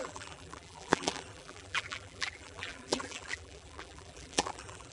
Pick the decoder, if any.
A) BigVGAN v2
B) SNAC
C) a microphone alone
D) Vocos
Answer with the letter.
A